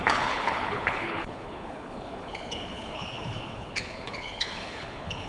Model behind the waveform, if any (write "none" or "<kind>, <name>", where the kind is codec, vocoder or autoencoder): codec, HILCodec